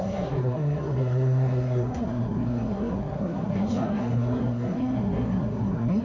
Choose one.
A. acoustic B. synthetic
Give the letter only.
B